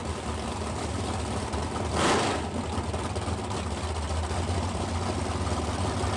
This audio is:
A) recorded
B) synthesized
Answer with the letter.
A